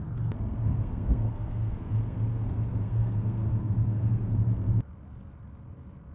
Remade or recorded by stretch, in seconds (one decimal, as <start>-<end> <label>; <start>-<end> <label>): 0.0-0.6 recorded; 0.6-4.3 remade; 4.3-6.1 recorded